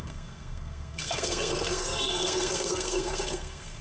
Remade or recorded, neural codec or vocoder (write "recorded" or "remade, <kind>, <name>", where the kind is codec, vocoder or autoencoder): remade, codec, SNAC